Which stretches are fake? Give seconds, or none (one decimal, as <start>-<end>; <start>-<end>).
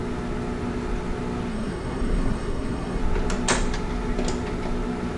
1.5-3.0